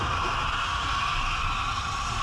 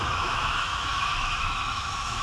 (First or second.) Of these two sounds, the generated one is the second